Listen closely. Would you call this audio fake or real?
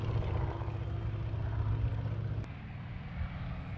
real